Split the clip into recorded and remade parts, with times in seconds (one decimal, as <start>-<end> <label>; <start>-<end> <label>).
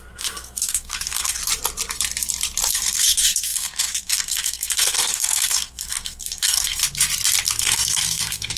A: 0.0-1.4 remade; 1.4-2.7 recorded; 2.7-6.8 remade; 6.8-7.6 recorded; 7.6-8.6 remade